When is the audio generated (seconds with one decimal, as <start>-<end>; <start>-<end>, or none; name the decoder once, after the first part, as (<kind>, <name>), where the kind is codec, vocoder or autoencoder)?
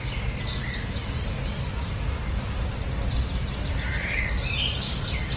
none